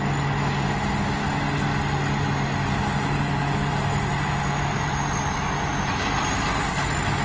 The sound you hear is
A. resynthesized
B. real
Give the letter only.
B